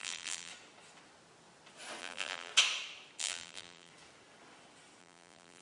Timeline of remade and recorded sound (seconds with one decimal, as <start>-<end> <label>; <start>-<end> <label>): 0.0-0.5 remade; 0.5-2.0 recorded; 2.0-2.5 remade; 2.5-3.2 recorded; 3.2-3.9 remade; 3.9-5.0 recorded; 5.0-5.6 remade